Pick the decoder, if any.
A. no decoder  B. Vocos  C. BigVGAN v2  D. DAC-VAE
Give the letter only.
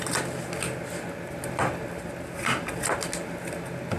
A